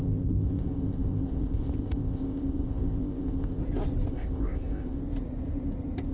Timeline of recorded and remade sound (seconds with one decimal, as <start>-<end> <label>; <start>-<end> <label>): 0.0-3.6 remade; 3.6-4.1 recorded; 4.1-5.0 remade; 5.0-6.1 recorded